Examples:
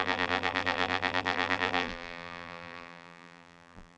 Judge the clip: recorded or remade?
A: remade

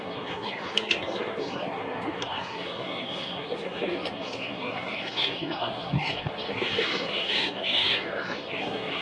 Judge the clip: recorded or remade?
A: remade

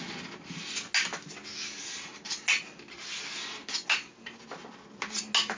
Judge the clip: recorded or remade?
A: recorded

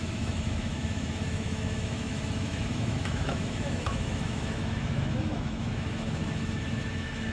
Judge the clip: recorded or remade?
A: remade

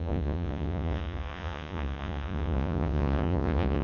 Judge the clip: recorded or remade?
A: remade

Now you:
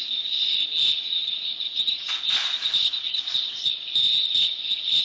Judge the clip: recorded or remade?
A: recorded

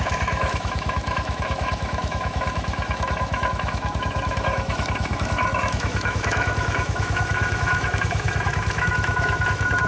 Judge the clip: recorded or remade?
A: remade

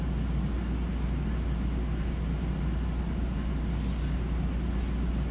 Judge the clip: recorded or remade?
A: recorded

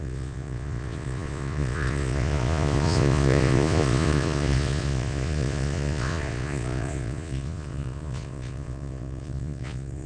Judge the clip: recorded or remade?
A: remade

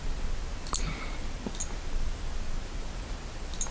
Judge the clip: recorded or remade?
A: recorded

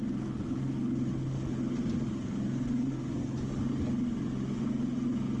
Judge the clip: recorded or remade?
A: recorded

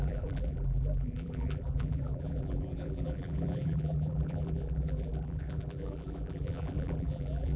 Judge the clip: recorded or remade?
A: remade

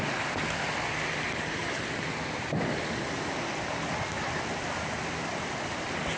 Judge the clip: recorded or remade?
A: recorded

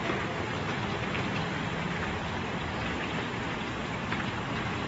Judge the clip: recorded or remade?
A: remade